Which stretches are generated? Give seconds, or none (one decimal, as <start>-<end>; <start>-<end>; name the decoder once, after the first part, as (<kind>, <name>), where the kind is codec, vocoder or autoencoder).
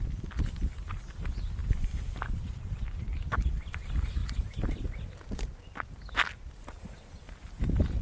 0.0-4.2 (vocoder, BigVGAN v2); 7.6-8.0